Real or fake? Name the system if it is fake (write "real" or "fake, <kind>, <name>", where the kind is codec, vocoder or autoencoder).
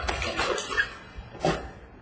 real